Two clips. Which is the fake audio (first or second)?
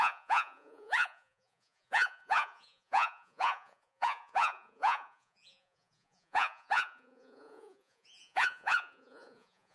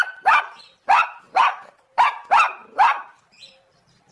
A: first